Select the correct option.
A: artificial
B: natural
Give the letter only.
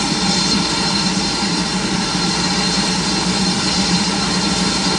A